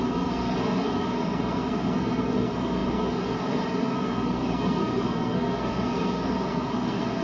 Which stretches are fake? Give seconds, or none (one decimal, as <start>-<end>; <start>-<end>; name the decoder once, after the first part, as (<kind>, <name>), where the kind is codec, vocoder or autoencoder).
0.0-7.2 (codec, SNAC)